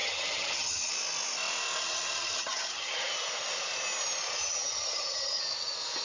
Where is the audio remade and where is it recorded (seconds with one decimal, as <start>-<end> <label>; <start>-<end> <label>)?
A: 0.0-0.9 remade; 0.9-1.8 recorded; 1.8-2.9 remade; 2.9-4.4 recorded; 4.4-5.4 remade; 5.4-6.0 recorded